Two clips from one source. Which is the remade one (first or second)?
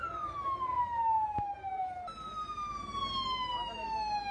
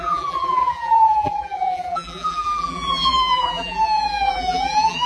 second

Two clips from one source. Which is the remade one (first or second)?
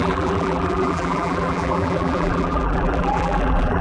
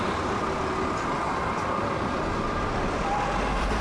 first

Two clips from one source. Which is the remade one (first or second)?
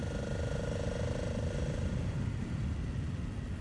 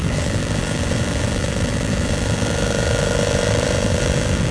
second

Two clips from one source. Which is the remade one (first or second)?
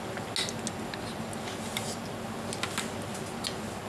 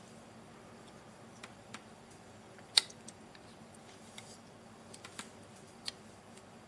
second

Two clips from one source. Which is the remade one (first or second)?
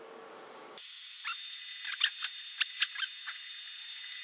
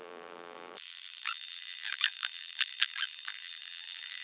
second